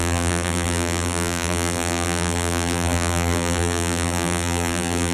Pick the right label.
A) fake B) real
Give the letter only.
A